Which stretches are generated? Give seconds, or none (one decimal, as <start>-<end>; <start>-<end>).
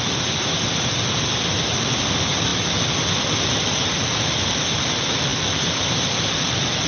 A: none